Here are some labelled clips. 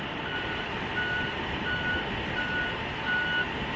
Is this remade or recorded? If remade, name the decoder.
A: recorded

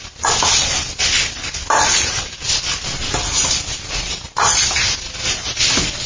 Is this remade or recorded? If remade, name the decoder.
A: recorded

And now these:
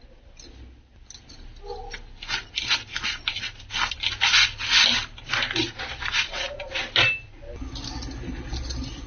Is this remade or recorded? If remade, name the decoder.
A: recorded